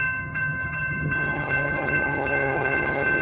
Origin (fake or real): fake